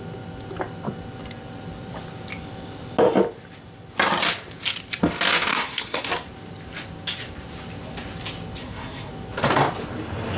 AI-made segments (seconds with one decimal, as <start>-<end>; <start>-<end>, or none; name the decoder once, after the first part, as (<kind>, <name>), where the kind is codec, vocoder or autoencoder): 5.5-6.1 (codec, SNAC); 8.6-9.1

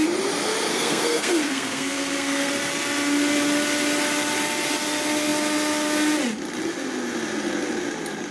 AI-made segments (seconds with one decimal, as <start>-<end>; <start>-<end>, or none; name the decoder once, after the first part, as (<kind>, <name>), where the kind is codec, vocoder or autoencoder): 0.7-2.5 (codec, SNAC)

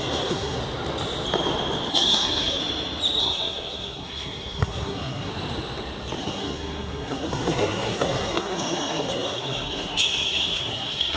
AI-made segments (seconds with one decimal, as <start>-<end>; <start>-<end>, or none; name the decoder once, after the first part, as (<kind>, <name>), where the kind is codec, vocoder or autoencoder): 0.0-0.6 (codec, SNAC); 1.9-2.6; 3.2-5.3; 6.2-11.2

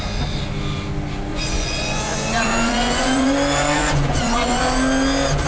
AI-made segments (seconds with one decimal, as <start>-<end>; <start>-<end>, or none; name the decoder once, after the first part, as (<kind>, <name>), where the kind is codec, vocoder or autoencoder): 1.3-4.6 (vocoder, Vocos)

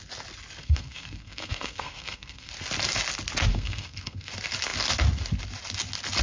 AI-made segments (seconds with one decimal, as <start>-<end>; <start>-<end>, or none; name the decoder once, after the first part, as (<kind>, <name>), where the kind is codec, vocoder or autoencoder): 0.6-2.5 (codec, SNAC); 3.5-4.3

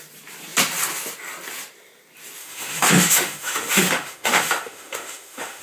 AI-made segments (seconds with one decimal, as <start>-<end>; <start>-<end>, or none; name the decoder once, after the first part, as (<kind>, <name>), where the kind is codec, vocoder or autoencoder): 2.4-5.6 (autoencoder, DAC-VAE)

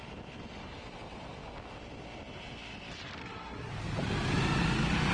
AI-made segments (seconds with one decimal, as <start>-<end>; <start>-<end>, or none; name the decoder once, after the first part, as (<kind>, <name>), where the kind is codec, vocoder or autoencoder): 3.2-3.7 (codec, SNAC)